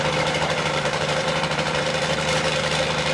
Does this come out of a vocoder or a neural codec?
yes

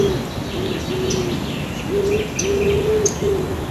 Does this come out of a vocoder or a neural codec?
no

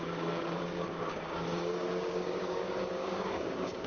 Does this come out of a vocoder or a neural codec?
yes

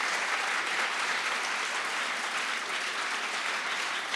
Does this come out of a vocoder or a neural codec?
no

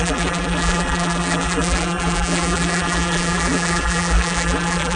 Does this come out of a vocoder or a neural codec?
yes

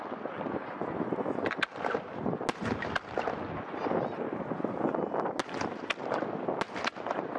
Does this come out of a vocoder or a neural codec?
no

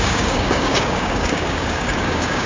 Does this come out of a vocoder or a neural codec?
yes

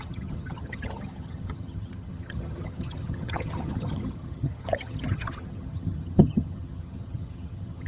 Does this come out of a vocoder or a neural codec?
yes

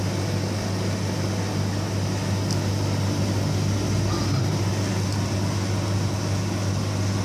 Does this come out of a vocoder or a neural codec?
no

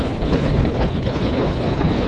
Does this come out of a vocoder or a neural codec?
yes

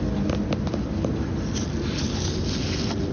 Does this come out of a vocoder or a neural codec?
no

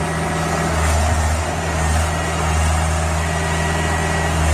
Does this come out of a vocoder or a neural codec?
no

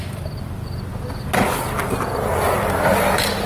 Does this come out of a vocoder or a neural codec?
no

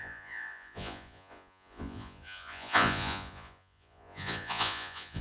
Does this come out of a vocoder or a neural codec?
yes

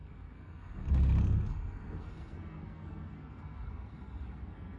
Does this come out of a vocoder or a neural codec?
yes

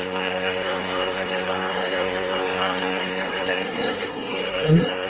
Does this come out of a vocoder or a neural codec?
yes